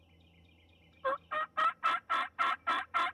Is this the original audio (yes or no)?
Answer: yes